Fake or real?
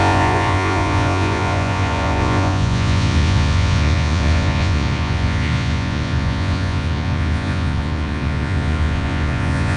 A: fake